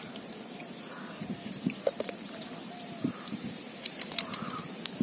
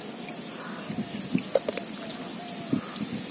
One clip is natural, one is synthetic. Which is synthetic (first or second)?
first